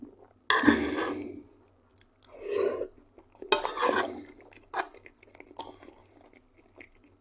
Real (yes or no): yes